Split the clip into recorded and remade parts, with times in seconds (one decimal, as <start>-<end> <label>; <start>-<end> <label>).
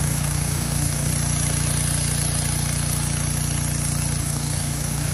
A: 0.0-1.1 remade; 1.1-4.2 recorded; 4.2-5.1 remade